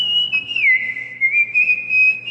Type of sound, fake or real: real